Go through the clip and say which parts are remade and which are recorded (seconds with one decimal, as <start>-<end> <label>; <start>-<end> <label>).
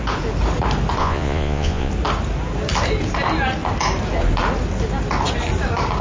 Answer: 0.0-1.0 recorded; 1.0-1.9 remade; 1.9-6.0 recorded